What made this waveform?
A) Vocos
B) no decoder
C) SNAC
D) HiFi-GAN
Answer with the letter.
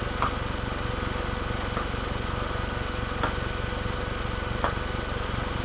B